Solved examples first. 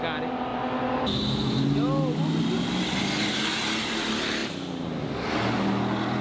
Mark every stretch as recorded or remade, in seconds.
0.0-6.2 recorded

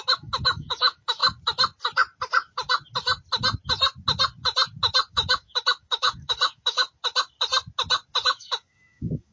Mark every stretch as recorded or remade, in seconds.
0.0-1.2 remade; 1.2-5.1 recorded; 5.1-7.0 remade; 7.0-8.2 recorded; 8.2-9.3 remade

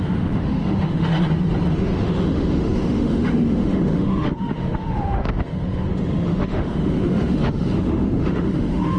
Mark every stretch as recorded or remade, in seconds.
0.0-1.1 remade; 1.1-1.7 recorded; 1.7-9.0 remade

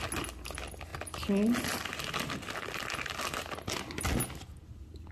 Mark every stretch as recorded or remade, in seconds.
0.0-5.1 recorded

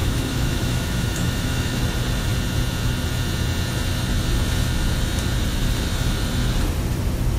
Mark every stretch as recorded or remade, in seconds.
0.0-1.8 remade; 1.8-7.4 recorded

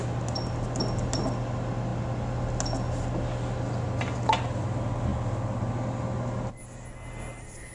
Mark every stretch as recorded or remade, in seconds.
0.0-7.7 recorded

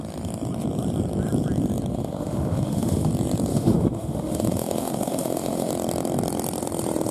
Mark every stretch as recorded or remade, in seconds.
0.0-1.9 recorded; 1.9-3.1 remade; 3.1-3.5 recorded; 3.5-5.7 remade; 5.7-7.1 recorded

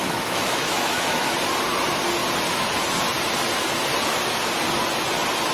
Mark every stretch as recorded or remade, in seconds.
0.0-1.3 remade; 1.3-5.5 recorded